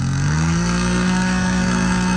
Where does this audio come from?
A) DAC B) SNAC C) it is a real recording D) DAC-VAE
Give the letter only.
B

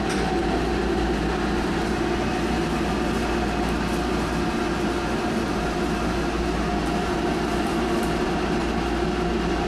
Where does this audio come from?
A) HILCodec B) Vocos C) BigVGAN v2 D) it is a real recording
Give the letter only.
D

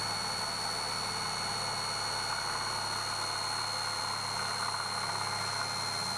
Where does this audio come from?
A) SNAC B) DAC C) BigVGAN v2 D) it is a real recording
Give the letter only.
D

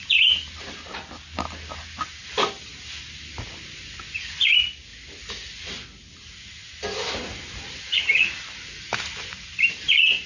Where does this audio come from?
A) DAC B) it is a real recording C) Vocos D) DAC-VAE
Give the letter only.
B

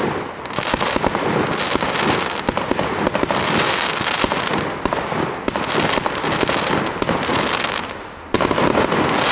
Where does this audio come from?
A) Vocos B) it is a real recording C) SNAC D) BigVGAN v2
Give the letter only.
B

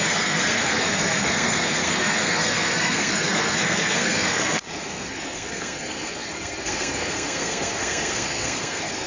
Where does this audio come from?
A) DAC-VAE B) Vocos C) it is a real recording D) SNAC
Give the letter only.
D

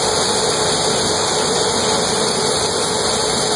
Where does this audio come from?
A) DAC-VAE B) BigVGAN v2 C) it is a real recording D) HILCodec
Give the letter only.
C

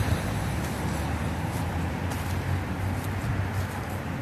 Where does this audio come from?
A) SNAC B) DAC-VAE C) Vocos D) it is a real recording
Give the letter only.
D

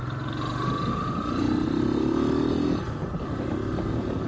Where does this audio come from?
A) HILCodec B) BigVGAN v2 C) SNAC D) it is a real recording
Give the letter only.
D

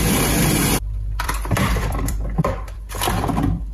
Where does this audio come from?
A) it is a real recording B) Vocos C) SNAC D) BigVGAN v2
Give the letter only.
D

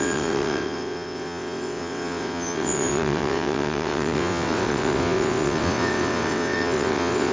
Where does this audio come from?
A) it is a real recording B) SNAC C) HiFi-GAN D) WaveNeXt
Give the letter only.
D